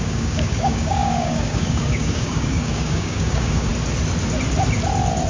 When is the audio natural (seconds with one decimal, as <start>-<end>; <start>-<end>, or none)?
3.7-5.3